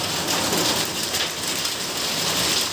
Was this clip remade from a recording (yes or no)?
no